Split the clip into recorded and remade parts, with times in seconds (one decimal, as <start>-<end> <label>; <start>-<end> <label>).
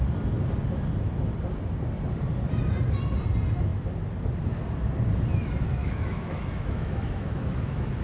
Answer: 0.0-5.8 recorded; 5.8-8.0 remade